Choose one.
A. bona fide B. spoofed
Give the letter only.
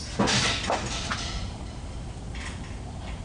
A